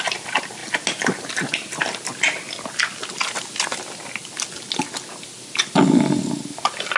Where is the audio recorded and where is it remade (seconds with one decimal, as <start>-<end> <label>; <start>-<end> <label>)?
0.0-7.0 recorded